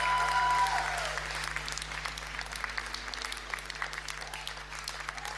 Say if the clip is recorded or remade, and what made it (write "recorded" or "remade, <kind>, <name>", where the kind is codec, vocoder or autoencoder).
recorded